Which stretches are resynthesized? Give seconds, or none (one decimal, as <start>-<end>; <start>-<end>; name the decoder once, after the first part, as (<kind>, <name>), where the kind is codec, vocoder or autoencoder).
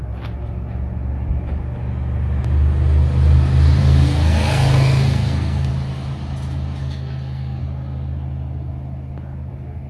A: 3.8-5.7 (codec, SNAC); 6.8-7.6